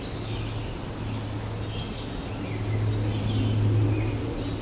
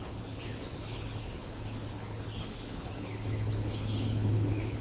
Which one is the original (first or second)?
first